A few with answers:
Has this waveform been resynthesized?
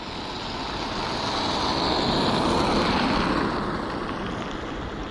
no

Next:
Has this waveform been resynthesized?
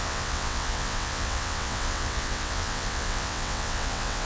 yes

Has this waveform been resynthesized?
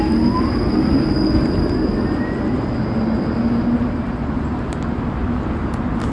no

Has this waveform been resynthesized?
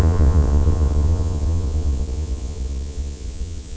yes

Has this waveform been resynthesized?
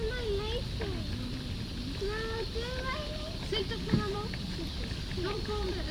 no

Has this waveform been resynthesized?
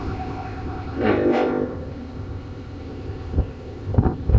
yes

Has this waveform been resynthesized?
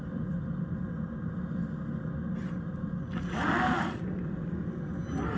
no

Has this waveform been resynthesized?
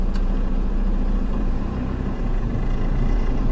yes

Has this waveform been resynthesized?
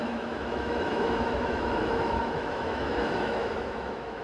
yes